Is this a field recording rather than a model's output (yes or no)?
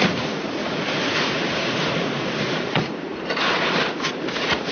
no